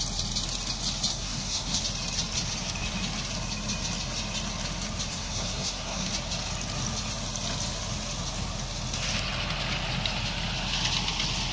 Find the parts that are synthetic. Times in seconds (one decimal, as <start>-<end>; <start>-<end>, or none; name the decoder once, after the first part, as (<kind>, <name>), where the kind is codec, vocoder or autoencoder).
1.1-1.8 (codec, SNAC); 5.1-6.1